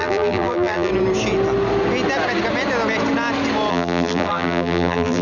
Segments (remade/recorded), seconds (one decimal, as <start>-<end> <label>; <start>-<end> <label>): 0.0-0.9 remade; 0.9-3.7 recorded; 3.7-5.2 remade